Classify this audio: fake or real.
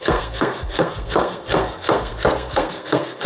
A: fake